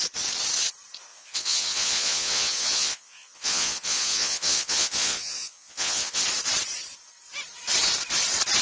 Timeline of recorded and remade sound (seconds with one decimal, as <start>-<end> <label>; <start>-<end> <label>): 0.0-1.1 recorded; 1.1-6.2 remade; 6.2-8.6 recorded